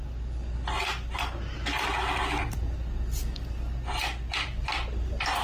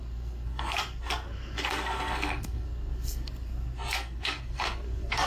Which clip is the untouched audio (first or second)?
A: first